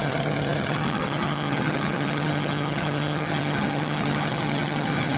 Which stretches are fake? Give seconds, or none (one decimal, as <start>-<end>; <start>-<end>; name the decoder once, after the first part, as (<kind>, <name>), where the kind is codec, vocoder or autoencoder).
0.0-5.2 (vocoder, HiFi-GAN)